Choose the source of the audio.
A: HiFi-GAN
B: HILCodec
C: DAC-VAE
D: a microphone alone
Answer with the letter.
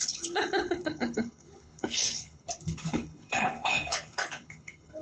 B